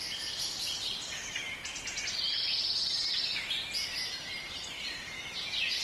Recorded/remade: recorded